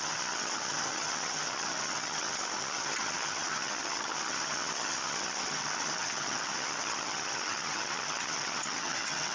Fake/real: fake